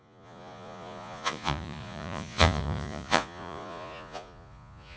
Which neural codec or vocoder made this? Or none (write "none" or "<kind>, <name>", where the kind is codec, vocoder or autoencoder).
vocoder, Vocos